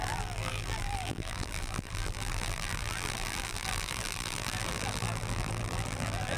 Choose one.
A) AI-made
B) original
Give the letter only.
A